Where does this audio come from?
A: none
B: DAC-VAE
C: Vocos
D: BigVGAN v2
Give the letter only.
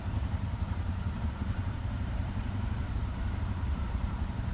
D